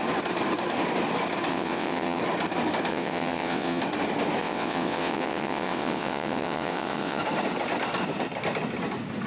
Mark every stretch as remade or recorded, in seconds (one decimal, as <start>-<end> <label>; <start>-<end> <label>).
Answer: 0.0-1.5 recorded; 1.5-2.2 remade; 2.2-2.9 recorded; 2.9-3.8 remade; 3.8-4.4 recorded; 4.4-7.2 remade; 7.2-9.3 recorded